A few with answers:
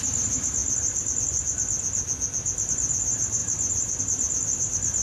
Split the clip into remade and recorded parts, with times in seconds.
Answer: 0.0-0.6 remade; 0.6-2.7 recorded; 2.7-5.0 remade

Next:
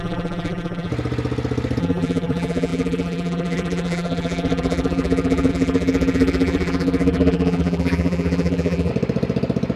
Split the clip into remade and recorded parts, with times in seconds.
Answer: 0.0-0.9 remade; 0.9-1.8 recorded; 1.8-8.9 remade; 8.9-9.8 recorded

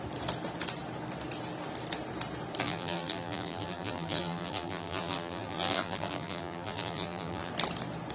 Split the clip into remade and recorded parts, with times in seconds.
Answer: 0.0-2.6 recorded; 2.6-7.5 remade; 7.5-8.1 recorded

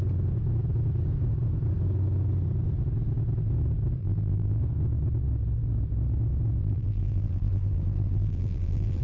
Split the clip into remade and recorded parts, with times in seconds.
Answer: 0.0-4.0 recorded; 4.0-4.6 remade; 4.6-6.6 recorded; 6.6-9.0 remade